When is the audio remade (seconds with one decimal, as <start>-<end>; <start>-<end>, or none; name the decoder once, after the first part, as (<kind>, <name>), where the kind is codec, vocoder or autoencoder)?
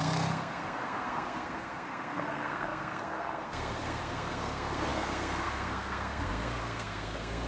0.0-7.5 (codec, SNAC)